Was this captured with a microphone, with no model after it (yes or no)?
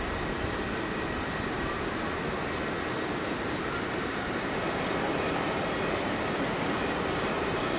no